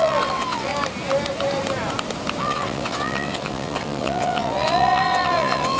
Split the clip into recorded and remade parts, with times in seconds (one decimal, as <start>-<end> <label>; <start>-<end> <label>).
0.0-0.7 remade; 0.7-2.4 recorded; 2.4-5.8 remade